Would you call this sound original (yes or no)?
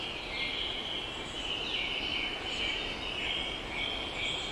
yes